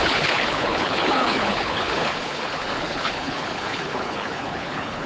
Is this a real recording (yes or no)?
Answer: no